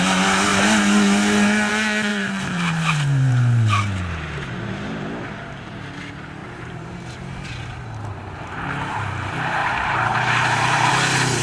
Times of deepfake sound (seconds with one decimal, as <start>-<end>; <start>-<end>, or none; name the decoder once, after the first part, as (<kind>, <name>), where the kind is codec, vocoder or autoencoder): 2.1-5.0 (vocoder, BigVGAN v2); 6.4-7.2; 9.6-10.9